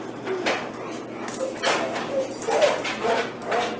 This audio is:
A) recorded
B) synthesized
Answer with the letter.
A